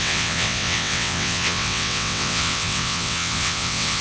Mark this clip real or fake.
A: fake